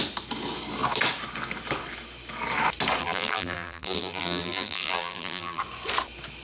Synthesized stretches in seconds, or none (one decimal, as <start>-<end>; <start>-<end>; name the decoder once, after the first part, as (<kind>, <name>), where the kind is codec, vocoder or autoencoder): 3.0-5.6 (vocoder, BigVGAN v2)